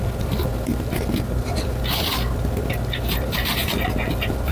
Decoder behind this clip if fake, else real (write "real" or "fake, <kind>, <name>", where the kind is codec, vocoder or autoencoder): real